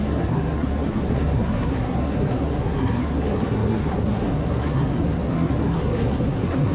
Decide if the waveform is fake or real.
fake